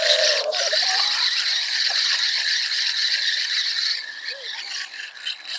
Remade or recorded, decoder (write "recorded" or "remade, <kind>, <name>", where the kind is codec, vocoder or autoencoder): recorded